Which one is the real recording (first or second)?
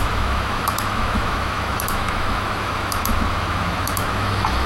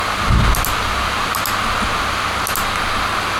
second